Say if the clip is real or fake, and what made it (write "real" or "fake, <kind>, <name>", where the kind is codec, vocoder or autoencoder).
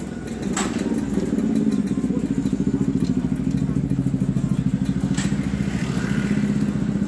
real